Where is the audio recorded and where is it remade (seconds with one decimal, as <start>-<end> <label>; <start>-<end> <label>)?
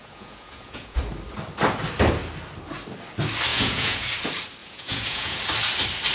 0.0-1.0 remade; 1.0-3.5 recorded; 3.5-4.1 remade; 4.1-4.6 recorded; 4.6-5.4 remade; 5.4-6.1 recorded